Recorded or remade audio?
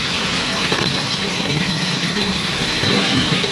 remade